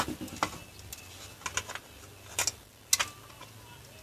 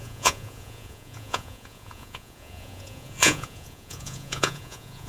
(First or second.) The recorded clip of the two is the first